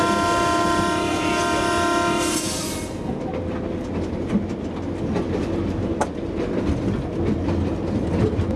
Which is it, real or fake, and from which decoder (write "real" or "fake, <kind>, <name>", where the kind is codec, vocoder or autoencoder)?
real